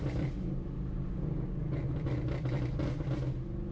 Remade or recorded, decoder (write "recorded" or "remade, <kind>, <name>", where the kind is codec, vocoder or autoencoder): recorded